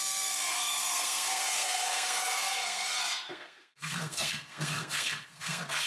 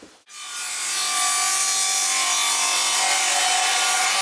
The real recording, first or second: second